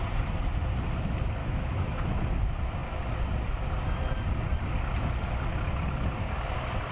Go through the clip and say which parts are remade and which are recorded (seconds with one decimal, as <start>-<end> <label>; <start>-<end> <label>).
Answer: 0.0-1.4 recorded; 1.4-2.4 remade; 2.4-6.9 recorded